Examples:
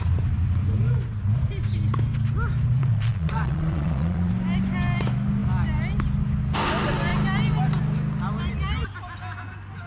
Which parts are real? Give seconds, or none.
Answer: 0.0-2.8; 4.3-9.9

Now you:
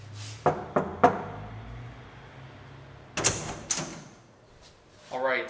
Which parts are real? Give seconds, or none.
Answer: 0.0-3.9; 4.5-5.5